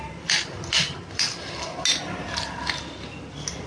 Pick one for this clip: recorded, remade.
recorded